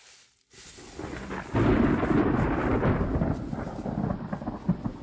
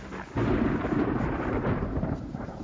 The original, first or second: first